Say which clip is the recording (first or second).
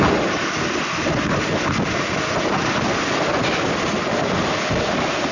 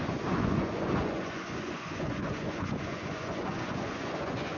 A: first